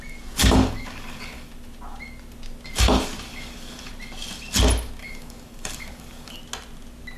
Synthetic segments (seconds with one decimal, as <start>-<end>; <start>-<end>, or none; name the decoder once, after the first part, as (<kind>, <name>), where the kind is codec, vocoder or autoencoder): 0.4-1.5 (codec, DAC); 3.3-3.9; 5.0-6.4